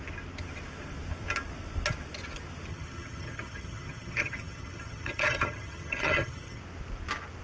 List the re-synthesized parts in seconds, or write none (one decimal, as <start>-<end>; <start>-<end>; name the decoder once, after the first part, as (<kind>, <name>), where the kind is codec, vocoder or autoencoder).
2.7-6.6 (vocoder, HiFi-GAN)